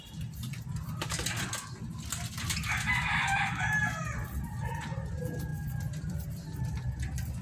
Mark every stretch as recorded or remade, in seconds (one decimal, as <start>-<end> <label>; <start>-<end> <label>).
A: 0.0-7.4 recorded